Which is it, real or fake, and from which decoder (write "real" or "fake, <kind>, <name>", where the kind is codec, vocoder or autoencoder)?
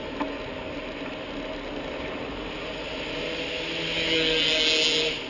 real